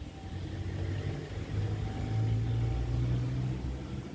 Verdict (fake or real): real